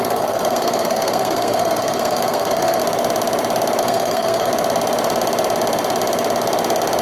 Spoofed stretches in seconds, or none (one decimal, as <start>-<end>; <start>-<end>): 0.0-2.8; 3.8-4.5